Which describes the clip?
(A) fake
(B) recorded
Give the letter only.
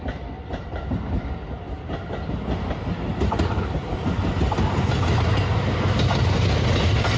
B